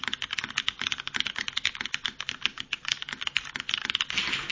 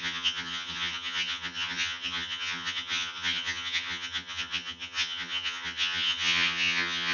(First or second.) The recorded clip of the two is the first